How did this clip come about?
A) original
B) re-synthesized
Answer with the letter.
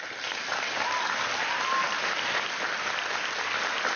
A